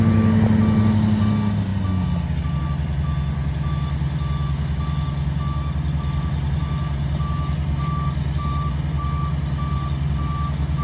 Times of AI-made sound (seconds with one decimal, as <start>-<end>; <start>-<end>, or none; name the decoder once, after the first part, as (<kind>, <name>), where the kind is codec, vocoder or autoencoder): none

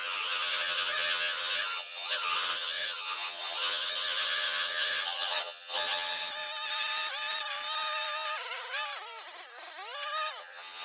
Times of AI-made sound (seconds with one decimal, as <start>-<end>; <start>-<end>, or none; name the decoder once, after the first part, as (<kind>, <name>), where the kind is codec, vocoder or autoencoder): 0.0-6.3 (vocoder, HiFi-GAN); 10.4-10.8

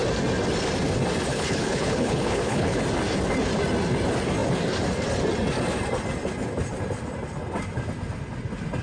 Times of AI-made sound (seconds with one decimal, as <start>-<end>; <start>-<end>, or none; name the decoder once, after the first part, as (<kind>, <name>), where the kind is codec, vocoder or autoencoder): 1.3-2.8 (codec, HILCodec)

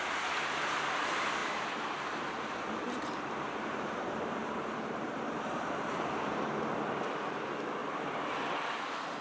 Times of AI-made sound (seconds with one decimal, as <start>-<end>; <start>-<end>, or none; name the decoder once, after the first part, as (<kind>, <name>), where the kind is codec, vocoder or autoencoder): 1.4-6.4 (vocoder, BigVGAN v2); 7.8-8.3

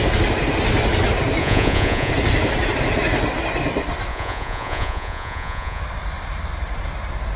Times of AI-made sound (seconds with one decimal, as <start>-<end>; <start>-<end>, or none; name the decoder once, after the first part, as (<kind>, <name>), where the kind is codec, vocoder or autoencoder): 1.4-2.1 (vocoder, Vocos); 4.1-5.8

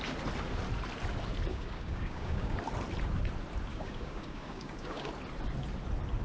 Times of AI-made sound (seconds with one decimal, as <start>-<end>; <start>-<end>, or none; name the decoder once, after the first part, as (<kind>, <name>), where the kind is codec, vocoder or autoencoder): 1.5-2.6 (codec, DAC); 3.7-5.1